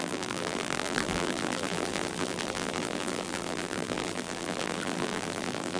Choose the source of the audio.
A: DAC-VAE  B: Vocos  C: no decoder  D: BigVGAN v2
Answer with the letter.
D